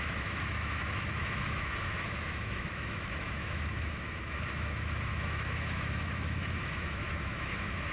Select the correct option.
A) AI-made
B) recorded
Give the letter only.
A